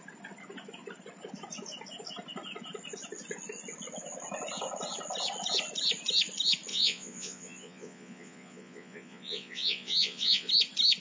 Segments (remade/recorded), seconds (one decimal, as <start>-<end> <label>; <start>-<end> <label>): 0.0-6.7 recorded; 6.7-10.5 remade; 10.5-11.0 recorded